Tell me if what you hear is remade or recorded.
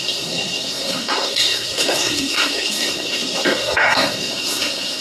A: remade